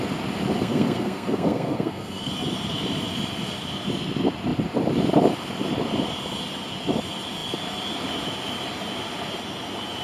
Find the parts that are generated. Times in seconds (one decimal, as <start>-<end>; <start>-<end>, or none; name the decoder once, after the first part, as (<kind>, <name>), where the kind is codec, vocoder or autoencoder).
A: 0.6-2.3 (codec, SNAC)